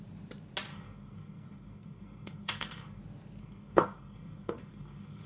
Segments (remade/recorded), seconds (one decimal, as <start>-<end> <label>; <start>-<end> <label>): 0.0-0.7 recorded; 0.7-3.0 remade; 3.0-3.4 recorded; 3.4-5.3 remade